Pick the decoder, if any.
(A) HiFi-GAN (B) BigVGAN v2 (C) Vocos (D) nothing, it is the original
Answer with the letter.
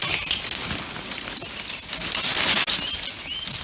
D